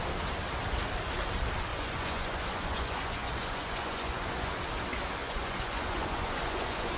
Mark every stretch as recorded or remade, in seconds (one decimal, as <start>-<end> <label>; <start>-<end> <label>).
0.0-1.7 recorded; 1.7-4.5 remade; 4.5-5.2 recorded; 5.2-7.0 remade